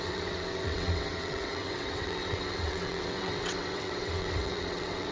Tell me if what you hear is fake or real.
fake